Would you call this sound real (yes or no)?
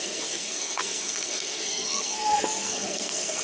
no